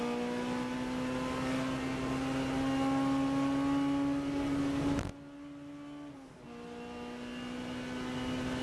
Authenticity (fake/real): real